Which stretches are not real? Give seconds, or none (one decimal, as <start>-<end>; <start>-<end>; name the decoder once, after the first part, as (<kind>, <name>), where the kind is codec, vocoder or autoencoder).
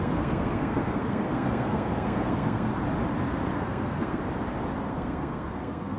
0.0-2.7 (codec, SNAC); 3.5-4.2; 4.9-6.0